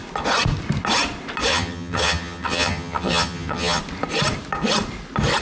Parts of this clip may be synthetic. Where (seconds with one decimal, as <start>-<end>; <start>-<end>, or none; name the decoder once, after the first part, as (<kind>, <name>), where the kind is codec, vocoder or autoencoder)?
1.5-3.8 (vocoder, HiFi-GAN)